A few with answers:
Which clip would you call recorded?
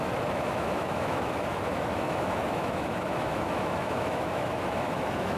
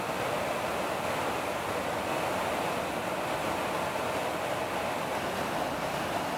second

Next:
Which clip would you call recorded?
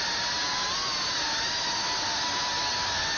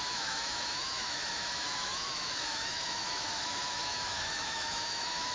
first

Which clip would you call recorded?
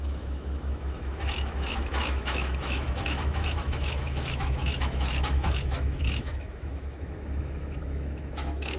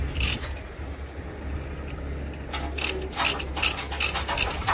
second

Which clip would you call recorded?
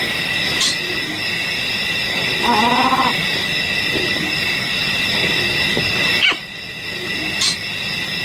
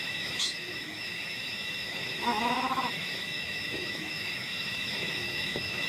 first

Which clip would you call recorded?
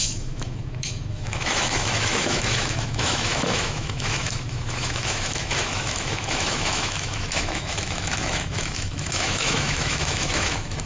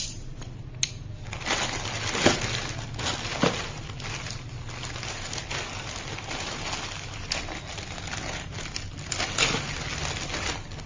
second